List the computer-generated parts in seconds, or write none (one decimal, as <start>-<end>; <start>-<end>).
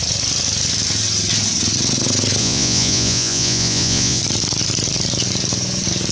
2.4-4.2